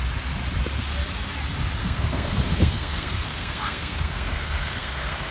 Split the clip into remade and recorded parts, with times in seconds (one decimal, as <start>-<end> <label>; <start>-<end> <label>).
0.0-1.8 recorded; 1.8-5.3 remade

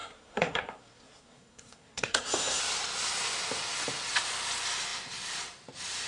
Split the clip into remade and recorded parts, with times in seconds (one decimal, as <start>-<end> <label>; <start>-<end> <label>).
0.0-2.6 remade; 2.6-6.1 recorded

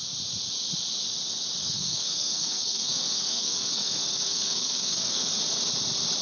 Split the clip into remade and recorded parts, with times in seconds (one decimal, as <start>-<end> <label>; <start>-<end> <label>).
0.0-1.6 recorded; 1.6-5.3 remade; 5.3-6.2 recorded

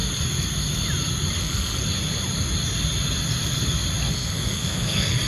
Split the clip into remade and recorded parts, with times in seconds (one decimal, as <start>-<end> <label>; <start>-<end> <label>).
0.0-1.4 recorded; 1.4-1.8 remade; 1.8-4.1 recorded; 4.1-5.3 remade

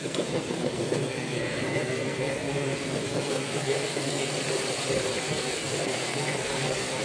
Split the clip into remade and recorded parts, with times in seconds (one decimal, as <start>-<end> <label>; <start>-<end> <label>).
0.0-4.3 remade; 4.3-5.1 recorded; 5.1-7.0 remade

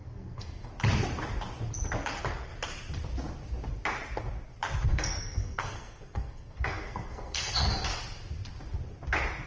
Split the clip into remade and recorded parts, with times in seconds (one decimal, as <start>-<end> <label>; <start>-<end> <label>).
0.0-0.7 remade; 0.7-4.9 recorded; 4.9-7.7 remade; 7.7-9.5 recorded